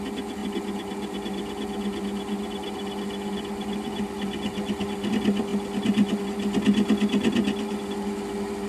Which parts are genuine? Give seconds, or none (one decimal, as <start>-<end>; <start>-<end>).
0.0-8.7